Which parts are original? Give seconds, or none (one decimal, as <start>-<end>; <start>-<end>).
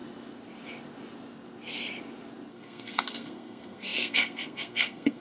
0.0-2.5